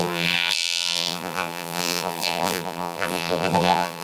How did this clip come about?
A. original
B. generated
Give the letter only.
B